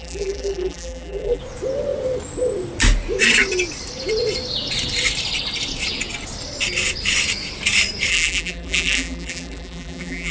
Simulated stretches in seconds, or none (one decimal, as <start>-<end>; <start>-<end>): 0.0-1.4; 8.1-10.3